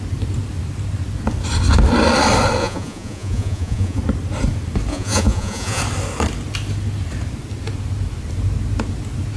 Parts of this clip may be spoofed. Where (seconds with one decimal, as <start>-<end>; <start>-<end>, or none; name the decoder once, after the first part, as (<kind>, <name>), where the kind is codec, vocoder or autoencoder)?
2.6-4.0 (vocoder, Vocos); 4.9-5.8